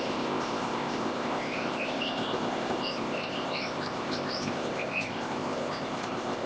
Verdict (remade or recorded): remade